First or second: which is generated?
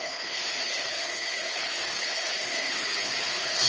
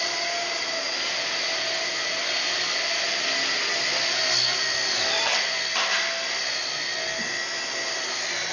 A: first